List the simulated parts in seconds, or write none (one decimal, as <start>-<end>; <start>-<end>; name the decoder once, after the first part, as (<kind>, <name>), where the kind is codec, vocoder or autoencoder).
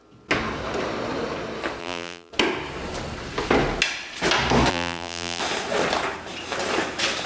1.8-2.3 (vocoder, BigVGAN v2); 4.7-5.4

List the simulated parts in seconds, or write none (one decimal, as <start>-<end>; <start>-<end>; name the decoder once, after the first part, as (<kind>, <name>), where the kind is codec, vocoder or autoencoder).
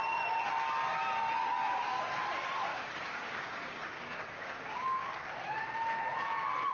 1.4-2.0 (codec, DAC); 2.7-5.1